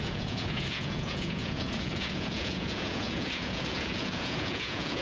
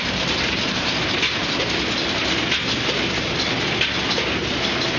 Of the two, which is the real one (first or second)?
second